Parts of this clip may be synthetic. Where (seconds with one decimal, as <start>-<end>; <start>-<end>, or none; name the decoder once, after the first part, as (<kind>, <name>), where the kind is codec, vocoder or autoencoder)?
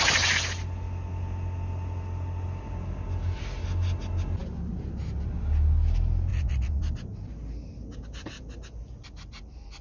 6.3-6.8 (vocoder, Vocos)